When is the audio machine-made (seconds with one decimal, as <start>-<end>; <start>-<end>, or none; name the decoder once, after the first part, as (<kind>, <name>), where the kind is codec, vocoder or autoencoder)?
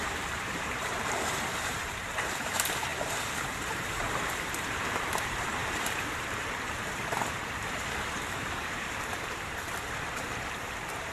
0.0-11.1 (vocoder, BigVGAN v2)